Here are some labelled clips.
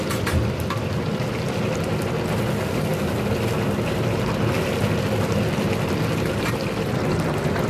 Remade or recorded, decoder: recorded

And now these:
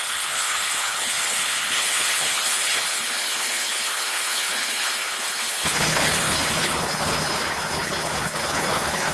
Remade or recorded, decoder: remade, codec, HILCodec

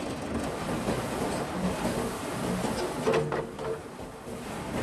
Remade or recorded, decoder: recorded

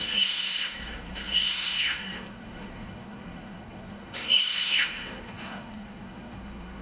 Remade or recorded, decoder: remade, codec, SNAC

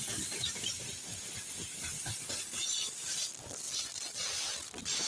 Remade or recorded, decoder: recorded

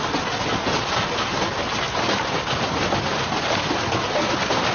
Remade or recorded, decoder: recorded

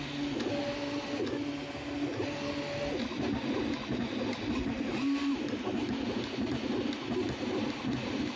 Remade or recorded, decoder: recorded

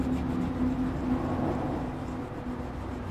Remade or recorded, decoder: recorded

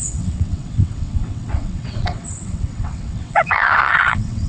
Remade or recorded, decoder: remade, vocoder, WaveNeXt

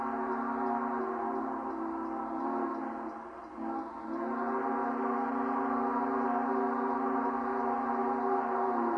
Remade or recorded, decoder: recorded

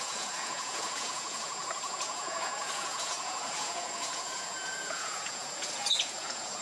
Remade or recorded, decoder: remade, vocoder, Vocos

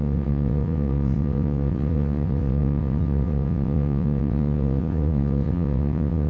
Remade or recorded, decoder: remade, vocoder, WaveNeXt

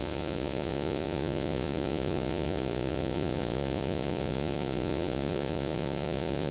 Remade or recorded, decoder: remade, vocoder, Vocos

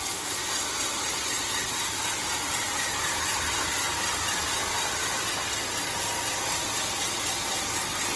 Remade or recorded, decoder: recorded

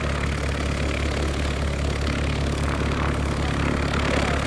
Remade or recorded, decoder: recorded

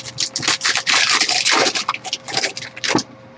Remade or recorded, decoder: recorded